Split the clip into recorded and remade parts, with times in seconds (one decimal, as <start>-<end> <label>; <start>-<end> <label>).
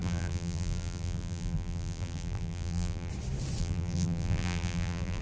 0.0-3.1 remade; 3.1-3.6 recorded; 3.6-5.2 remade